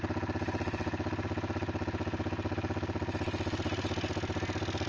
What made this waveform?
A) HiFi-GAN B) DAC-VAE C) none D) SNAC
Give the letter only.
C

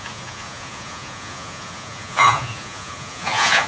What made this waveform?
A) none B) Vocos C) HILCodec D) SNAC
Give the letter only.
B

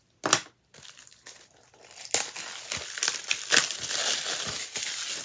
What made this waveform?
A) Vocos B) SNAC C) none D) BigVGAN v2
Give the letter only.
C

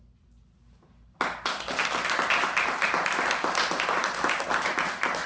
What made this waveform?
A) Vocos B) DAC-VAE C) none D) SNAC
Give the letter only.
C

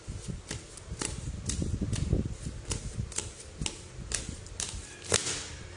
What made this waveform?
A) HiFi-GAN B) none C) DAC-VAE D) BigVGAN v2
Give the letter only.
B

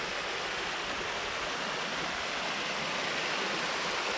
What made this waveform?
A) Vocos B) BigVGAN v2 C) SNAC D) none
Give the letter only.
D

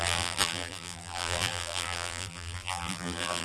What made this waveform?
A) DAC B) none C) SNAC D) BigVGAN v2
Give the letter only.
D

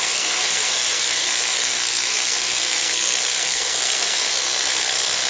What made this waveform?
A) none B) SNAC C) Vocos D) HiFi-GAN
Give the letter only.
B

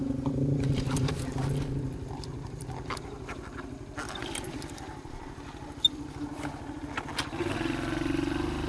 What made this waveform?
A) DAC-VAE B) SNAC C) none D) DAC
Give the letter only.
C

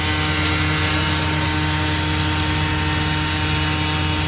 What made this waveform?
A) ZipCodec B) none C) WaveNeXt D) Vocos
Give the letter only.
B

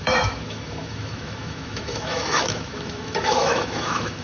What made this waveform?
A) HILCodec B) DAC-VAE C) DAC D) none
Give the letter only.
B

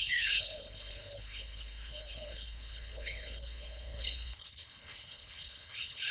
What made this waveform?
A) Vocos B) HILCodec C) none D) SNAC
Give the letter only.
B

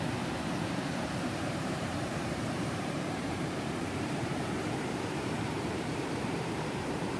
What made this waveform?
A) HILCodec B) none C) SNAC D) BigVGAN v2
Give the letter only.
D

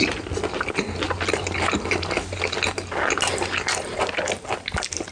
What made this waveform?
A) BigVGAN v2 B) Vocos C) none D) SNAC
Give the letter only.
C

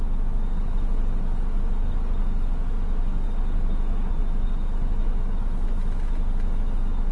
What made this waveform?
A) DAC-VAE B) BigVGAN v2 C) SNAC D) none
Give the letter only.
D